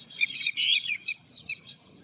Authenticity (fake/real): fake